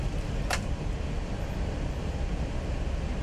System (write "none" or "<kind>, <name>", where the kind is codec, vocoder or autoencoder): vocoder, BigVGAN v2